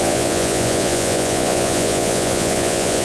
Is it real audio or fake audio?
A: fake